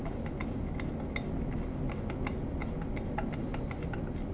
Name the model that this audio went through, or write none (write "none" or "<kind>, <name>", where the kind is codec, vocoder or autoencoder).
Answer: none